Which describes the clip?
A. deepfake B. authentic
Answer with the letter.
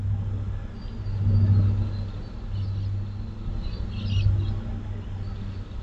B